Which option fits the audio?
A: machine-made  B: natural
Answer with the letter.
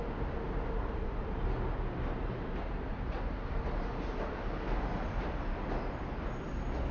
B